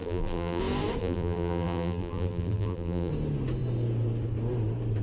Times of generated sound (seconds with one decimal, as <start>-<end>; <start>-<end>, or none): 0.0-0.6; 1.0-3.1